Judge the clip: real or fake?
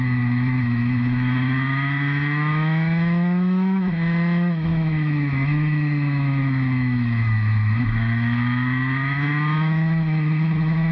fake